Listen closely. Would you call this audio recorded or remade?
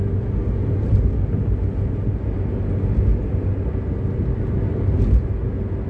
recorded